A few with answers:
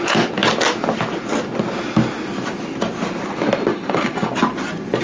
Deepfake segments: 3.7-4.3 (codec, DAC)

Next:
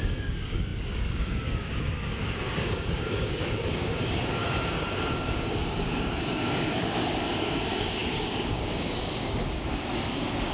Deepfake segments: 0.0-10.5 (codec, DAC)

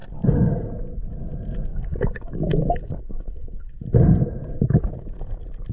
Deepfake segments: 1.7-3.7 (codec, DAC)

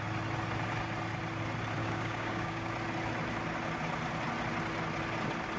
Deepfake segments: 1.8-2.7 (codec, DAC)

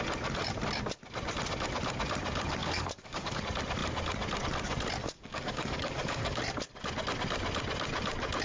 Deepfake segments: 2.6-3.4 (codec, DAC); 5.0-6.4